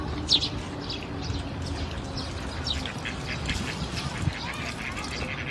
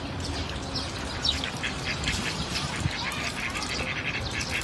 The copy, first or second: second